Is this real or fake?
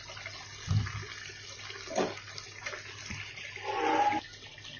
real